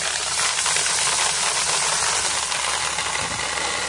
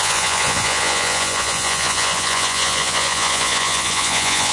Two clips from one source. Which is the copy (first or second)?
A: second